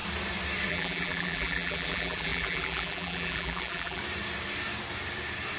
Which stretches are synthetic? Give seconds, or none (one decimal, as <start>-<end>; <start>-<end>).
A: 0.7-4.0